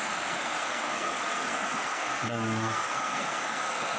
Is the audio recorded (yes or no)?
no